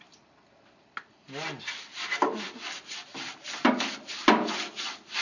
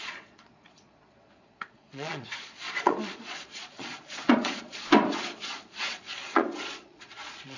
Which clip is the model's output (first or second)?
second